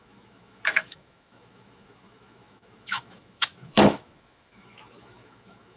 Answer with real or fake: fake